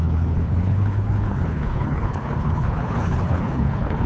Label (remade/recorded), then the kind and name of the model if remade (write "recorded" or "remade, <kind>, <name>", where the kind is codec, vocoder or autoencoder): remade, codec, HILCodec